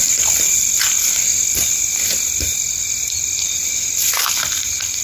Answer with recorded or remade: recorded